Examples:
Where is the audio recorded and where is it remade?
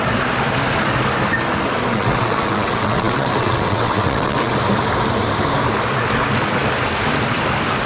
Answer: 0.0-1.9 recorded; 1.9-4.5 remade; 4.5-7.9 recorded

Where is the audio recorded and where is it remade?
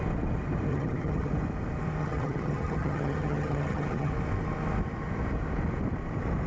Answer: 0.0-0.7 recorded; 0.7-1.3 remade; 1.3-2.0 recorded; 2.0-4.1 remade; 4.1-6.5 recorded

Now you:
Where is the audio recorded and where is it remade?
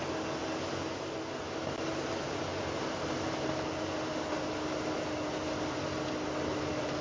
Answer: 0.0-7.0 recorded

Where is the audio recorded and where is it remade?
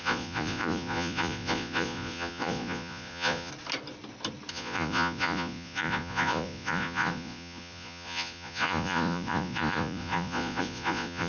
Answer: 0.0-3.5 remade; 3.5-4.5 recorded; 4.5-11.3 remade